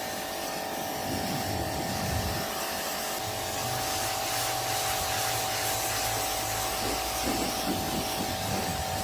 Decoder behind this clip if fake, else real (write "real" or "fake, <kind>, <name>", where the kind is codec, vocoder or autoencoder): real